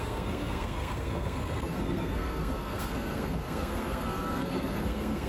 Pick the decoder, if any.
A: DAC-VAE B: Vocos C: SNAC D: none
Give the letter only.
C